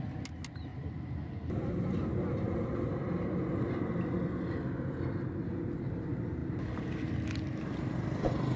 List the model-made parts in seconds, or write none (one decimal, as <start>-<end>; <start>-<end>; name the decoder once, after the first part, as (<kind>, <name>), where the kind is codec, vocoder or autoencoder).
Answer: none